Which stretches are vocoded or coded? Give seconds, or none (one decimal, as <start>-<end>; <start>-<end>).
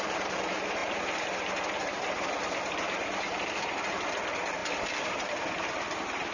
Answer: none